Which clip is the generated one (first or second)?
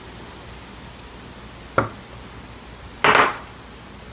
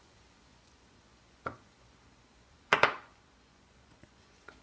second